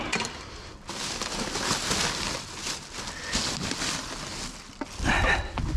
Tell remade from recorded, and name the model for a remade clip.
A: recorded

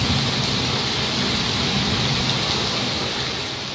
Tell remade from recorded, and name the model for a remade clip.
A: recorded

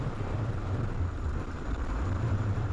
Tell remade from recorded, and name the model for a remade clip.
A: remade, vocoder, BigVGAN v2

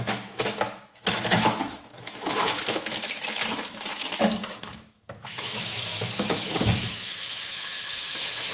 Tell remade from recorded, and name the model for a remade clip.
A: remade, autoencoder, DAC-VAE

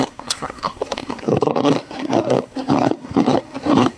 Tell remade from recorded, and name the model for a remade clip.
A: remade, codec, SNAC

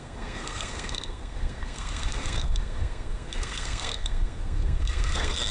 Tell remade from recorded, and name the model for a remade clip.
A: remade, codec, SNAC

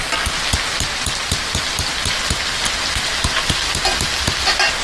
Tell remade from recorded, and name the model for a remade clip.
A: recorded